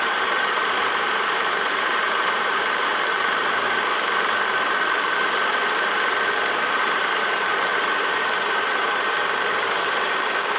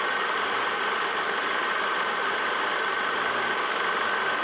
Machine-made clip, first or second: first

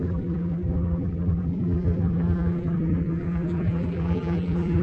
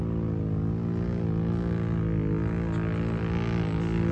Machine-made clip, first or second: first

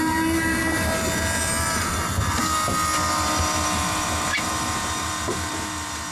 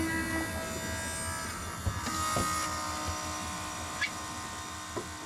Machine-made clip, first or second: first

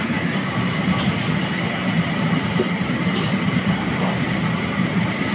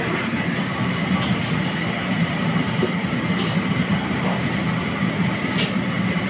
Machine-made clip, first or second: first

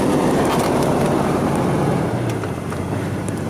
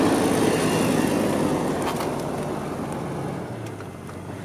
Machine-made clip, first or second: first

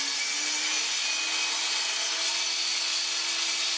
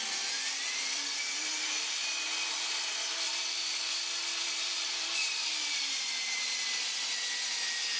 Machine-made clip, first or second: second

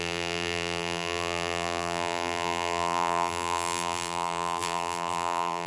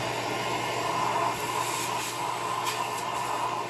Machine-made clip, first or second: first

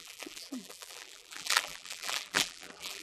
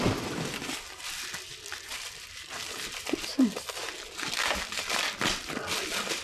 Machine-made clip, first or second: first